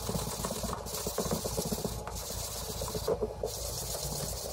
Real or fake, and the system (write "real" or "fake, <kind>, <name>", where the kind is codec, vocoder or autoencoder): real